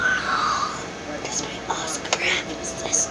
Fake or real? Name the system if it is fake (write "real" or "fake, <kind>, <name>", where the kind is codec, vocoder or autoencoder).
real